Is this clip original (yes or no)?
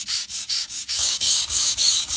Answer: no